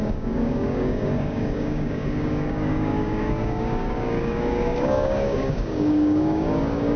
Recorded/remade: remade